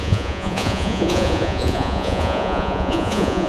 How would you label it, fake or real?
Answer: fake